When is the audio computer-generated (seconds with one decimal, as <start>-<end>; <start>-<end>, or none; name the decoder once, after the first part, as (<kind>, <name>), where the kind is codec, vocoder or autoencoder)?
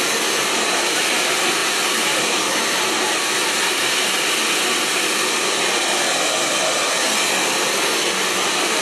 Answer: none